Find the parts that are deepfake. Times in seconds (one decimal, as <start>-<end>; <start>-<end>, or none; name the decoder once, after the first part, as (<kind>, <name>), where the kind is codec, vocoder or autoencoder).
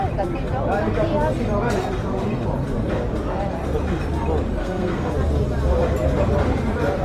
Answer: 4.6-5.1 (codec, SNAC)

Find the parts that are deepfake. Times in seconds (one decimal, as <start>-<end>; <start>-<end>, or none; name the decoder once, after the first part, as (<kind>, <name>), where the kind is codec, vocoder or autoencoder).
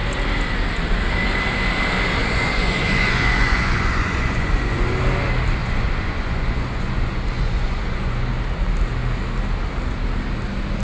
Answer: 2.2-5.0 (vocoder, Vocos); 5.6-8.3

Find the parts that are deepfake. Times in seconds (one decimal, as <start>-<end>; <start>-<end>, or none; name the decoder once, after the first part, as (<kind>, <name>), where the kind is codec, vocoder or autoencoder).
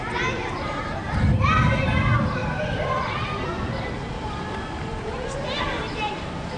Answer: none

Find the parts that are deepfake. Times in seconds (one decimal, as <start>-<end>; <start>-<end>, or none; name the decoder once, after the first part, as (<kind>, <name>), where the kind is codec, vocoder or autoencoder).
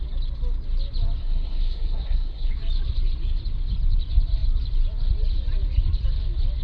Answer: 1.2-2.5 (codec, SNAC)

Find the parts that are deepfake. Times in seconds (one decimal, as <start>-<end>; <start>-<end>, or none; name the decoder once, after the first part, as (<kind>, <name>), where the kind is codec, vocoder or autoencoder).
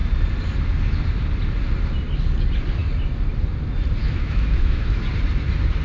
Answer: 4.0-5.0 (autoencoder, DAC-VAE)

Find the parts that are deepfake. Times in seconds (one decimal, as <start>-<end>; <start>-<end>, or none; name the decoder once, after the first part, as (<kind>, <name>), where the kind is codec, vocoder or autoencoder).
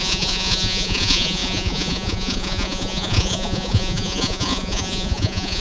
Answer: 0.0-5.6 (vocoder, Vocos)